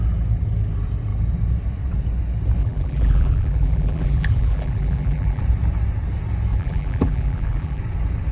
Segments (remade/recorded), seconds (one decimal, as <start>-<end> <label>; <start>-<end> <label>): 0.0-2.6 recorded; 2.6-5.4 remade; 5.4-6.5 recorded; 6.5-7.8 remade; 7.8-8.3 recorded

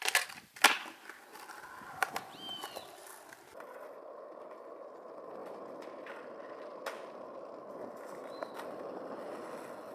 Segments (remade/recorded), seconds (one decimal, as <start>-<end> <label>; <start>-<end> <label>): 0.0-8.4 recorded; 8.4-9.3 remade; 9.3-9.9 recorded

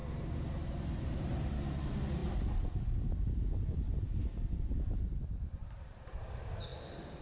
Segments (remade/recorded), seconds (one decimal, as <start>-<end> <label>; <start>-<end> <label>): 0.0-1.8 remade; 1.8-5.6 recorded; 5.6-6.3 remade; 6.3-7.2 recorded

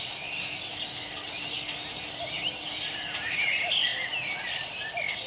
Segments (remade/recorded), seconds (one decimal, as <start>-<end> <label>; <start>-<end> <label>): 0.0-3.9 remade; 3.9-5.3 recorded

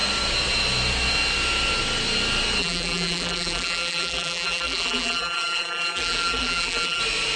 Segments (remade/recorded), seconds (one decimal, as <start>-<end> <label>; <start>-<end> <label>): 0.0-2.6 recorded; 2.6-7.0 remade; 7.0-7.4 recorded